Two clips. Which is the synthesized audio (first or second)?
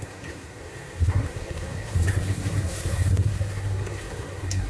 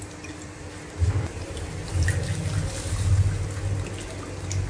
first